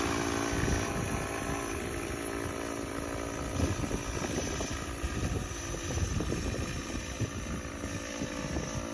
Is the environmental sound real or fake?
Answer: real